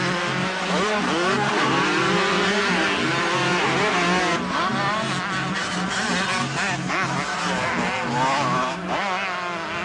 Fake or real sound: real